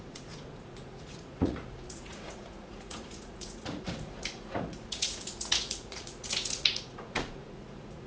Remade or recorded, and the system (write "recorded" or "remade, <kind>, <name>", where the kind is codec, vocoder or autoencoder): remade, vocoder, Vocos